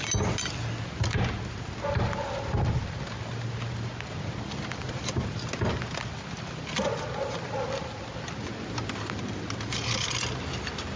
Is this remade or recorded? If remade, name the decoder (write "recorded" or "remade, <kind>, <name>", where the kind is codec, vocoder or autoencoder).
recorded